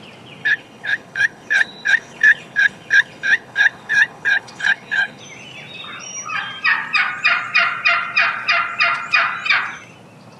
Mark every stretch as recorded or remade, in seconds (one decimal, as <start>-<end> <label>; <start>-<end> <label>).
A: 0.0-0.4 recorded; 0.4-5.2 remade; 5.2-10.4 recorded